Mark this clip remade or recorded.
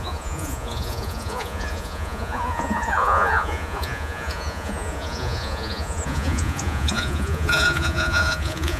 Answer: remade